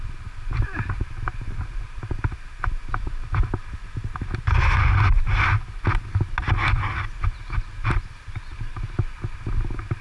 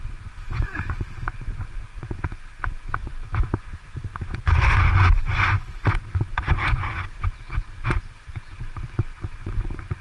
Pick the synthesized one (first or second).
second